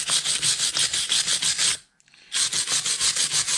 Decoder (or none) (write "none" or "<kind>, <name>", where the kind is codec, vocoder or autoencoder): none